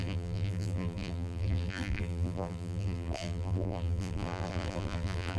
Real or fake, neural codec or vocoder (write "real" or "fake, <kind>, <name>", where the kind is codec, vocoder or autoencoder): fake, vocoder, BigVGAN v2